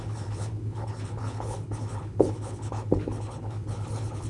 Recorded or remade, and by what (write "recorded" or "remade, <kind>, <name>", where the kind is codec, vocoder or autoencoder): remade, codec, HILCodec